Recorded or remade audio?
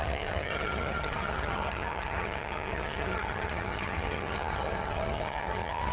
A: remade